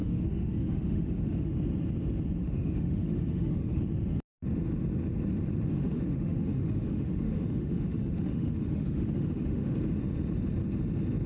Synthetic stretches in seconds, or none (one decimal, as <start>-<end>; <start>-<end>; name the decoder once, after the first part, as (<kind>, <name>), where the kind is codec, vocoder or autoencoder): 0.0-1.5 (autoencoder, DAC-VAE); 2.4-3.8; 5.7-9.8